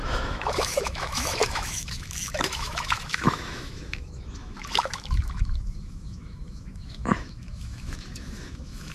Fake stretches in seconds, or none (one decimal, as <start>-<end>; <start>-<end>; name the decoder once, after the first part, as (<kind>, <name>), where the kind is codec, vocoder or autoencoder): 0.0-8.9 (autoencoder, DAC-VAE)